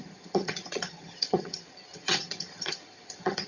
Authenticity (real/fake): fake